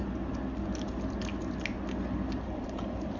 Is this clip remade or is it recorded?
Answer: recorded